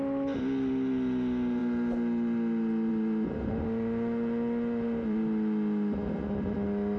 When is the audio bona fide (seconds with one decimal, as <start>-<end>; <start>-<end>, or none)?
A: 0.0-7.0

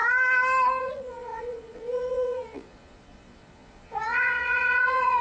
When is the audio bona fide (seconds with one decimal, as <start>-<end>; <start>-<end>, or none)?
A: 0.0-0.8

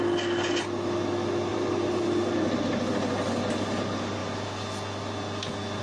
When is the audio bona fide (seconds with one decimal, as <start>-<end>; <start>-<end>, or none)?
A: 0.0-1.5; 2.1-5.8

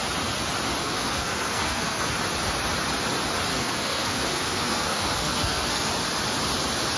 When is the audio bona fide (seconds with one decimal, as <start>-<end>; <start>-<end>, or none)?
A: 0.0-0.8; 2.1-3.5; 5.9-7.0

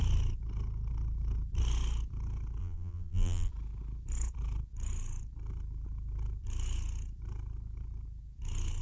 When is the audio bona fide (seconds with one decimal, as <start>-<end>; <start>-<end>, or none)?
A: 0.0-2.6; 3.5-8.8